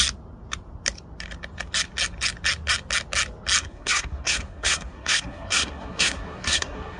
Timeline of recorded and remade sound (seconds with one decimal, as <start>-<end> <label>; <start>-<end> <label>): 0.0-3.6 recorded; 3.6-7.0 remade